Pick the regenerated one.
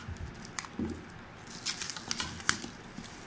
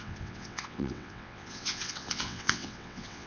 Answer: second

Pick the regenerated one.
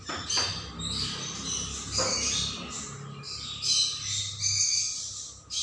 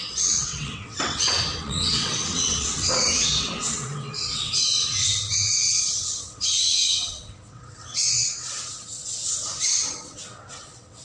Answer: second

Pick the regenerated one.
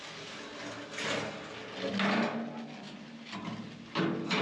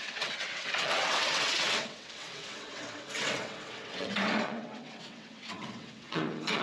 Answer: second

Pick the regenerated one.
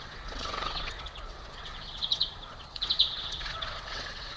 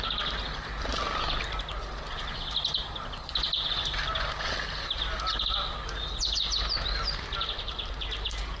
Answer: first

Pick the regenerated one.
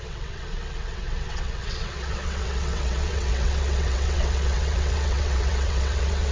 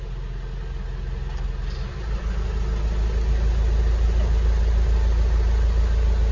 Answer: first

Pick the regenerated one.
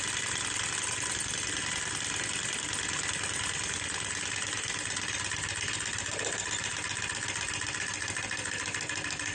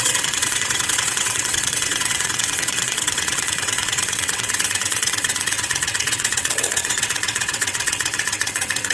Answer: second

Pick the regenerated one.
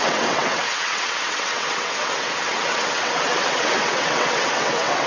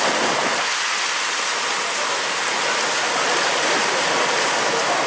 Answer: first